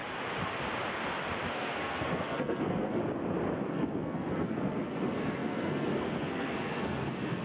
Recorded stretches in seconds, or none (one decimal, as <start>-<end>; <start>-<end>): 0.0-1.5; 3.0-3.7

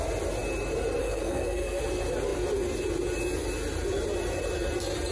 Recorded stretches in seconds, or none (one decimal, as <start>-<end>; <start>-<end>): 0.0-1.0; 1.8-5.1

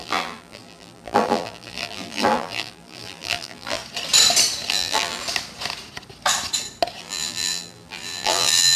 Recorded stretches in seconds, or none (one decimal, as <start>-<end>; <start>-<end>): 3.8-4.7; 5.2-7.0

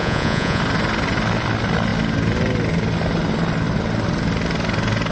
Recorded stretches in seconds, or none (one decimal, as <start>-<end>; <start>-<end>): 0.6-5.1

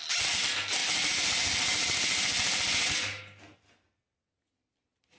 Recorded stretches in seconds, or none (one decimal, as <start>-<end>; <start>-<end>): 0.0-5.2

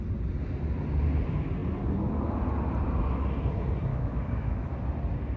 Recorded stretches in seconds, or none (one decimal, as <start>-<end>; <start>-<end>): 0.0-3.9; 4.7-5.4

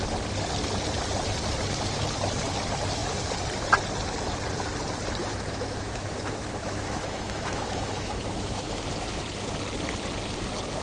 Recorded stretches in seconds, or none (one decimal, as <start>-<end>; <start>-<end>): 0.0-5.2; 8.9-10.8